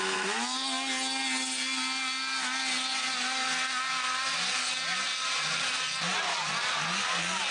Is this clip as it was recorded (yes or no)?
yes